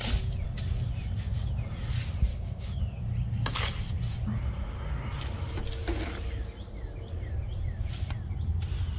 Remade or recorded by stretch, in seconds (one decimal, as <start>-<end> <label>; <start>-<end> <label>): 0.0-2.3 recorded; 2.3-2.8 remade; 2.8-9.0 recorded